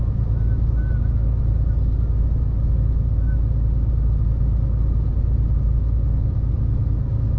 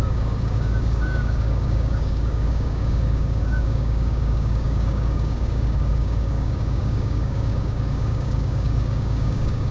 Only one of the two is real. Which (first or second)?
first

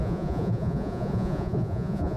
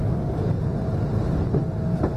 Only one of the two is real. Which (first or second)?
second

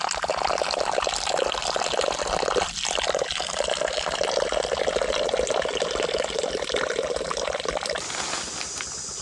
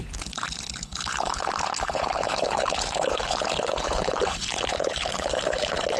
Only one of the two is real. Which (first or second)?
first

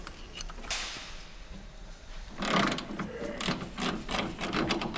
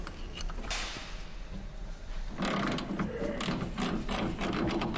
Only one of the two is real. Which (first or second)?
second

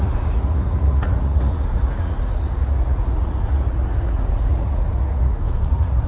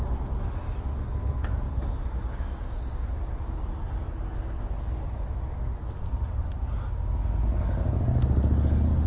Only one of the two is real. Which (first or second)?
second